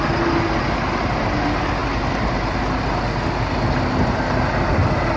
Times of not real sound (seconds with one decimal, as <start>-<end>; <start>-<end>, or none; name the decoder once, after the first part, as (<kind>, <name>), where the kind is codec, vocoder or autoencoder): none